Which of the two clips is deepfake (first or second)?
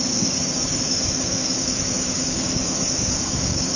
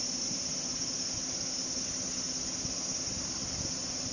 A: first